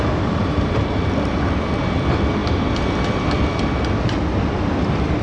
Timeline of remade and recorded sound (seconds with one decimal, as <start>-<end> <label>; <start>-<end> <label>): 0.0-5.2 recorded